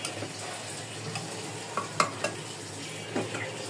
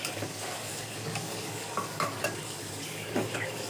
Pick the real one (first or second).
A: first